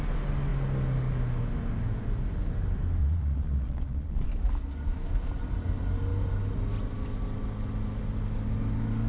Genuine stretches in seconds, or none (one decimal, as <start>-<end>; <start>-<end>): 0.0-3.0; 4.3-9.1